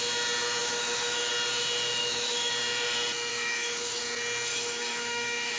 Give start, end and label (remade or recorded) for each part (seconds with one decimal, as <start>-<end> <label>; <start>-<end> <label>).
0.0-0.6 recorded; 0.6-1.3 remade; 1.3-2.0 recorded; 2.0-2.5 remade; 2.5-3.3 recorded; 3.3-4.0 remade; 4.0-4.5 recorded; 4.5-5.6 remade